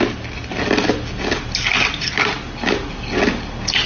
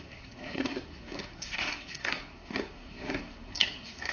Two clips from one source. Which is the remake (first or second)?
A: second